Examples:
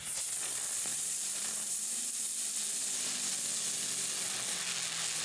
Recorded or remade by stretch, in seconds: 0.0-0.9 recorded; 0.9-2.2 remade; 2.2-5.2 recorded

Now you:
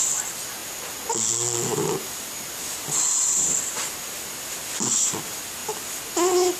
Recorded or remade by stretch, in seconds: 0.0-6.6 recorded

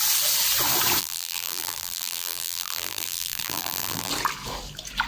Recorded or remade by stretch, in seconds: 0.0-1.0 recorded; 1.0-4.1 remade; 4.1-5.1 recorded